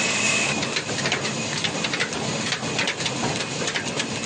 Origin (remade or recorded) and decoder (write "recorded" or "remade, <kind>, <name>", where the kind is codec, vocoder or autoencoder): recorded